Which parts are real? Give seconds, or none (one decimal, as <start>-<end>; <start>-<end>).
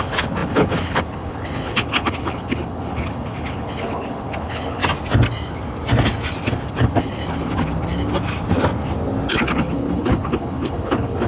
4.8-6.7; 7.2-9.3